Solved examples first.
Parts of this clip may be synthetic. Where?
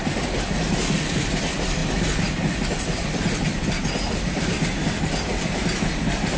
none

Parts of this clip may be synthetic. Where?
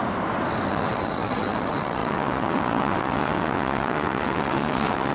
0.7-5.1 (vocoder, WaveNeXt)